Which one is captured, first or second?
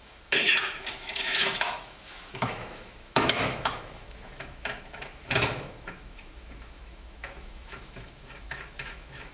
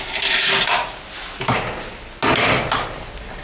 second